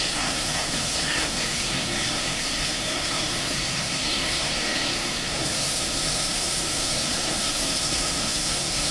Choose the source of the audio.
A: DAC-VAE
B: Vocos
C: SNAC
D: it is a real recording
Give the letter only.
C